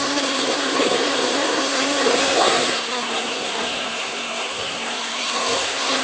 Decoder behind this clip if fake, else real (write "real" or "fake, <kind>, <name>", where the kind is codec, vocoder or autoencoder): fake, codec, SNAC